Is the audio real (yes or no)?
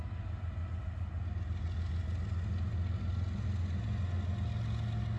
yes